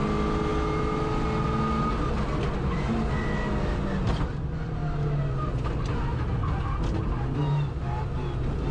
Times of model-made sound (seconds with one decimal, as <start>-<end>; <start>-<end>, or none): none